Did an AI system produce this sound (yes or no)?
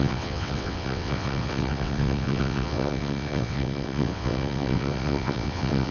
yes